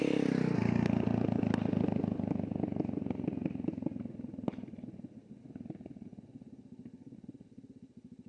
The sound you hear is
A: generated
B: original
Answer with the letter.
B